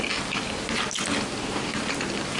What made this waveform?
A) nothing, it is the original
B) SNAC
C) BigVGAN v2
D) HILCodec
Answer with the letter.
A